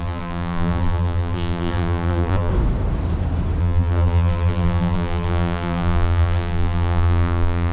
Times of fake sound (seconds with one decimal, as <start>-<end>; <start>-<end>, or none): 0.0-2.5; 3.6-7.7